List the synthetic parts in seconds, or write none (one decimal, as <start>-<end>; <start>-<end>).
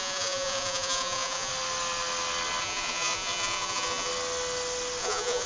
0.0-1.5; 2.6-4.1; 5.0-5.5